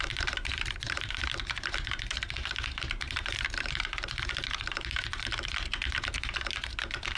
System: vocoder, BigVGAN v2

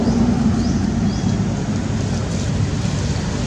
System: none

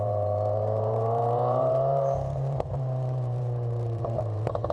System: vocoder, BigVGAN v2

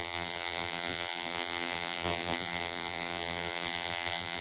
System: vocoder, BigVGAN v2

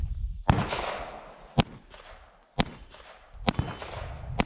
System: none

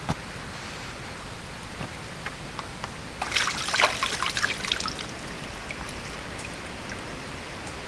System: vocoder, BigVGAN v2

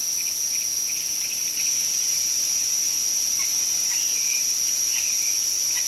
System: none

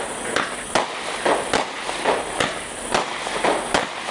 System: none